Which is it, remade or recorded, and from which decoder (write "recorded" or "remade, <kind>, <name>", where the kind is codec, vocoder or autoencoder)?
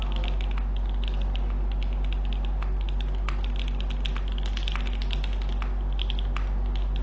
recorded